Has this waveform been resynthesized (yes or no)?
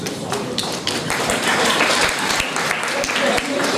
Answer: yes